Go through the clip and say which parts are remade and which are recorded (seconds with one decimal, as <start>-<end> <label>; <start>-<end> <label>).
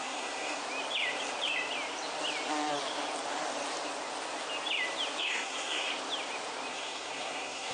0.0-0.6 remade; 0.6-5.2 recorded; 5.2-5.9 remade; 5.9-6.7 recorded; 6.7-7.7 remade